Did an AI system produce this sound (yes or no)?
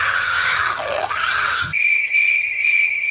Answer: yes